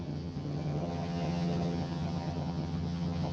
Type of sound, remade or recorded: remade